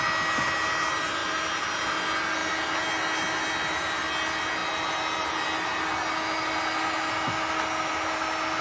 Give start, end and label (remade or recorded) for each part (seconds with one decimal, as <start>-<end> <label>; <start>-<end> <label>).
0.0-8.6 recorded